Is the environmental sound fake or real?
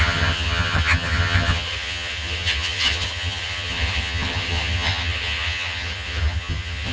fake